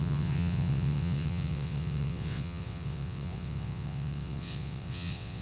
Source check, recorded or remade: remade